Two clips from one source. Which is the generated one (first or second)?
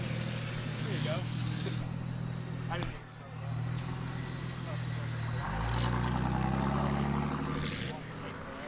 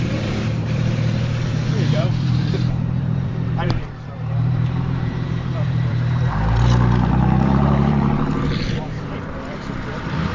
second